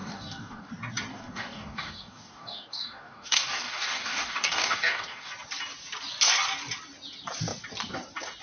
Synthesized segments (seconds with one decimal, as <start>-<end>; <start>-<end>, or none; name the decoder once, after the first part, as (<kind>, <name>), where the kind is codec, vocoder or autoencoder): 0.0-0.7 (codec, DAC); 1.1-5.3

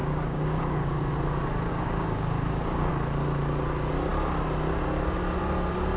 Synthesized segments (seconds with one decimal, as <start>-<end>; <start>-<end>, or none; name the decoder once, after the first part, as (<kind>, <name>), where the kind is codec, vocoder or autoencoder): 0.0-1.1 (codec, DAC); 1.7-2.9

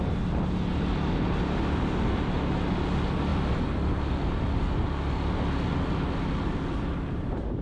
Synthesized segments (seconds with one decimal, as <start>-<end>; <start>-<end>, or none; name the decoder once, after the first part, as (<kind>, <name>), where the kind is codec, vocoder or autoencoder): none